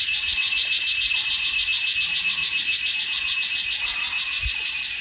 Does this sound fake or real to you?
fake